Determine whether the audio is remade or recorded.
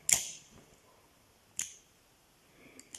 recorded